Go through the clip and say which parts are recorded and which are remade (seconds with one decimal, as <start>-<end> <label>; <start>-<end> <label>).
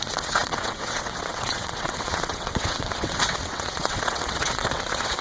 0.0-5.2 remade